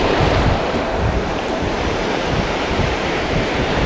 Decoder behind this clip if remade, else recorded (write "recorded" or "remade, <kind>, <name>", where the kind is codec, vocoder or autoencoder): remade, vocoder, BigVGAN v2